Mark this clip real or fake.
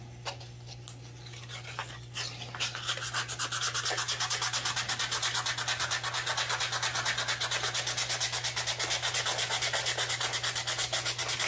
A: real